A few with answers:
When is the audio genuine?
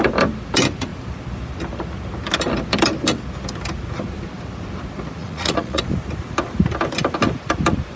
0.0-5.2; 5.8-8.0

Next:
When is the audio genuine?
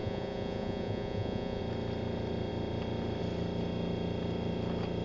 1.6-5.0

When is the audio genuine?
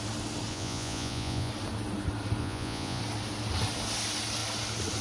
0.0-0.5; 1.5-2.4; 3.0-5.0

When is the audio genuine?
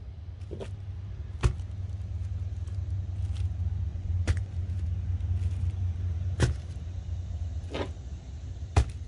0.0-3.9; 4.7-9.1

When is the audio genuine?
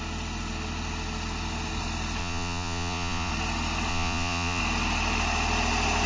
0.0-2.2; 3.3-3.9; 4.6-6.1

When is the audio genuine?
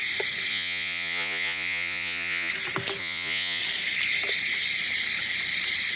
0.0-0.5; 2.5-3.0; 3.6-6.0